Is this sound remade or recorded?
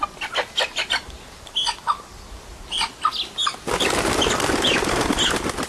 recorded